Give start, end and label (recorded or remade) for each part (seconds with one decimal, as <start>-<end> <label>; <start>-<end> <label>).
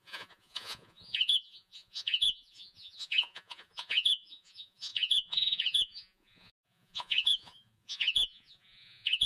0.0-9.3 remade